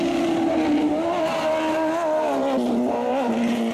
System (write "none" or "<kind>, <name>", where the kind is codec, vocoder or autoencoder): none